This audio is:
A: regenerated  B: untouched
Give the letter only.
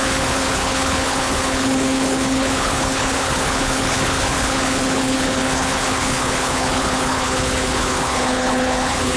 A